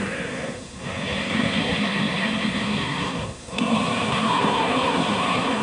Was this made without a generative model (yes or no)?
no